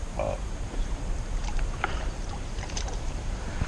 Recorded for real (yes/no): no